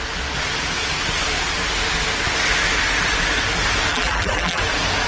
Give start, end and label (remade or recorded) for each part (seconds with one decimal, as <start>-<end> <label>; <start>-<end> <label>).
0.0-3.9 recorded; 3.9-4.6 remade; 4.6-5.1 recorded